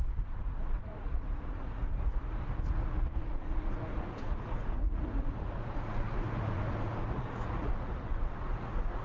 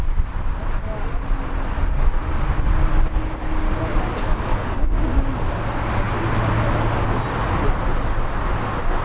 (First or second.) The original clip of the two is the second